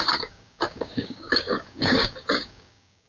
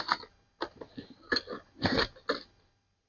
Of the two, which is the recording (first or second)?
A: second